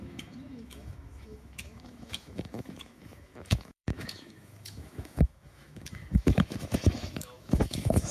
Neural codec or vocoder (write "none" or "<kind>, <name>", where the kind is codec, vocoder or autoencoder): autoencoder, DAC-VAE